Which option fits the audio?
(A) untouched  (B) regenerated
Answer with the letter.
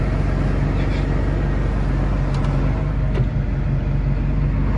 A